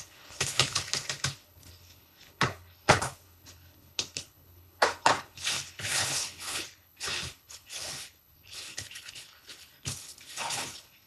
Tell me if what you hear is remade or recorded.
remade